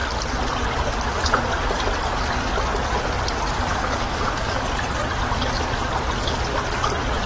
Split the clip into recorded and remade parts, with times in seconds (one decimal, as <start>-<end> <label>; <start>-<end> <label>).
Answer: 0.0-3.7 recorded; 3.7-4.6 remade; 4.6-7.3 recorded